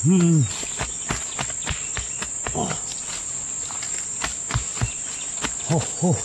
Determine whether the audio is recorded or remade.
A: recorded